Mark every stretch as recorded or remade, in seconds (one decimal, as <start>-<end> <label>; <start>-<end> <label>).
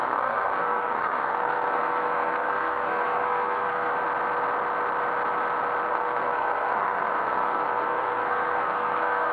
0.0-3.9 remade; 3.9-5.9 recorded; 5.9-9.3 remade